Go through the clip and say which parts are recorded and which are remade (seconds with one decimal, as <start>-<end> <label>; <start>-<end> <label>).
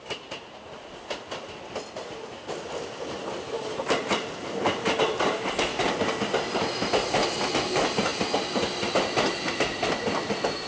0.0-10.7 recorded